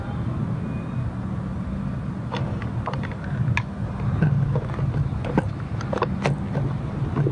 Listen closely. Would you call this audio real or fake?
real